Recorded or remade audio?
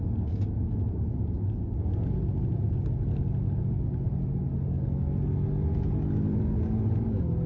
recorded